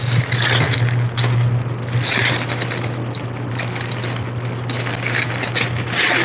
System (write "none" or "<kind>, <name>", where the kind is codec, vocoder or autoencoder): none